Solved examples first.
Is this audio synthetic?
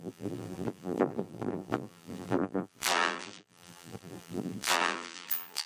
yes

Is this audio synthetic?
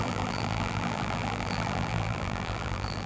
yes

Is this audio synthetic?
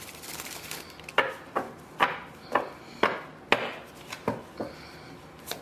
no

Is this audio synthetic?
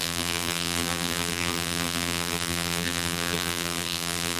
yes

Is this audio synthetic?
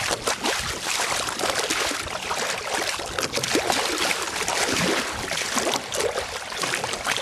no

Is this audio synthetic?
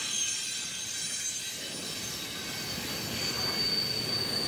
no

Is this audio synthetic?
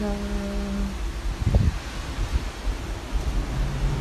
no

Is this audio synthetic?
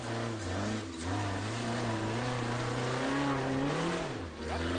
no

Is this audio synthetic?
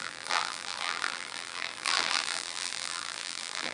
yes